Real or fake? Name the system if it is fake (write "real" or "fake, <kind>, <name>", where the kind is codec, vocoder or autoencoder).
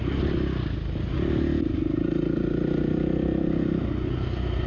real